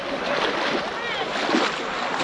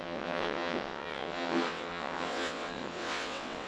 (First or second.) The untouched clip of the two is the first